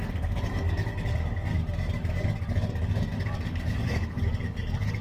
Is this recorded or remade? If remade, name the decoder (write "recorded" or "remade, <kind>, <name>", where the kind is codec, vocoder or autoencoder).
remade, codec, DAC